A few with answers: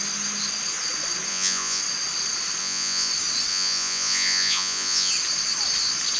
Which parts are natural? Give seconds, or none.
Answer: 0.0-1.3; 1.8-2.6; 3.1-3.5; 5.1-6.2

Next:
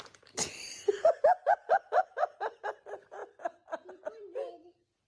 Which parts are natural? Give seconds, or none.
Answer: 0.0-5.1

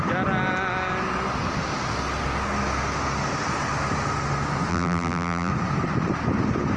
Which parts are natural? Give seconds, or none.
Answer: 0.0-4.7; 5.5-6.8

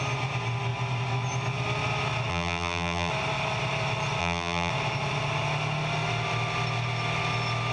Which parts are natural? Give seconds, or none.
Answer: 0.0-2.3; 3.1-4.2; 4.7-7.7

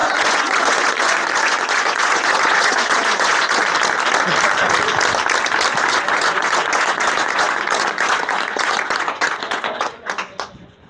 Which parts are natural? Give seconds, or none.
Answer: 3.6-5.9

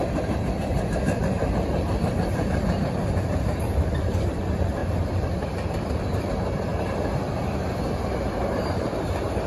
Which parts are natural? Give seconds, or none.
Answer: 6.7-8.6

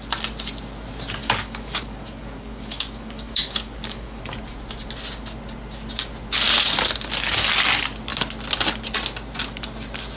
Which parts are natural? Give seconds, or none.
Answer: 0.0-1.2; 4.2-10.2